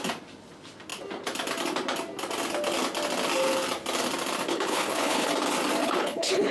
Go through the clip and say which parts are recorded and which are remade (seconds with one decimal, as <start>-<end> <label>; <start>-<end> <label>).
0.0-4.5 recorded; 4.5-5.3 remade; 5.3-5.8 recorded; 5.8-6.5 remade